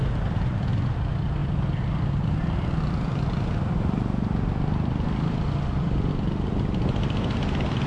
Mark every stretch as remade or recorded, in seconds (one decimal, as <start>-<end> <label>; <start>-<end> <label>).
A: 0.0-7.9 recorded